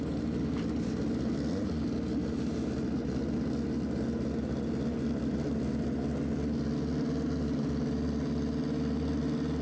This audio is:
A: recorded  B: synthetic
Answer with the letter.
A